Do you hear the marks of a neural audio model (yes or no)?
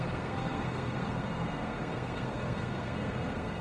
yes